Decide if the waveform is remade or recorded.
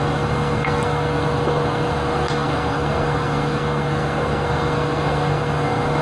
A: remade